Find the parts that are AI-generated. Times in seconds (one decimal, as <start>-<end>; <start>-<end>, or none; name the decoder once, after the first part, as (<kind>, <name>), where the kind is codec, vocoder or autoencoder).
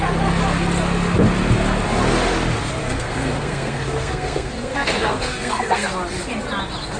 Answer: 2.8-5.9 (codec, SNAC)